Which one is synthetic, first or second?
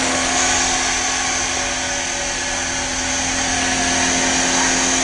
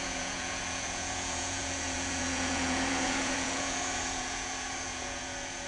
second